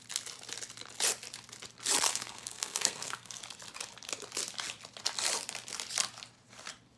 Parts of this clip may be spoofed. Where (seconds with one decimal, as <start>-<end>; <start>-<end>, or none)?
2.1-3.4